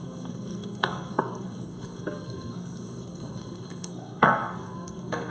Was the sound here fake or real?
fake